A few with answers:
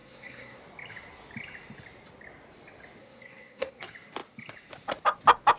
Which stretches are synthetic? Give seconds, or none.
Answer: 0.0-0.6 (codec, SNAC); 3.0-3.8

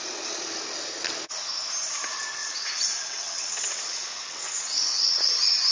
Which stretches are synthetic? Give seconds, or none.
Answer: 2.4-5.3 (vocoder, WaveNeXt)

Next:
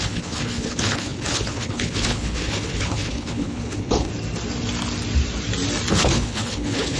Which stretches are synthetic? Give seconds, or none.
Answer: 0.0-4.1 (codec, HILCodec); 5.9-7.0

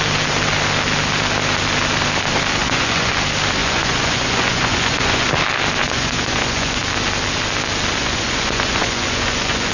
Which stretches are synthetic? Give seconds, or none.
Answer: 2.6-3.1 (vocoder, Vocos); 3.6-5.3; 5.8-6.8; 8.0-9.7

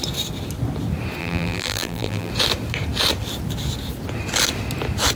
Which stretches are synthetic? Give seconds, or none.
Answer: 1.2-2.3 (vocoder, BigVGAN v2)